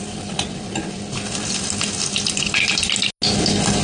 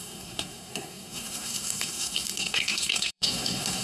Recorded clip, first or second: first